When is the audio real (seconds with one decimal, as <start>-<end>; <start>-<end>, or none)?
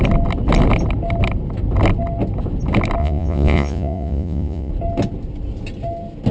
0.0-3.0; 4.7-6.3